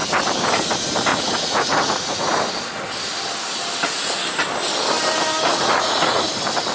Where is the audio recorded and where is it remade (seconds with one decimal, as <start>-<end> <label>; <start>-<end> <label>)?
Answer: 0.0-1.1 recorded; 1.1-2.4 remade; 2.4-5.5 recorded; 5.5-6.3 remade; 6.3-6.7 recorded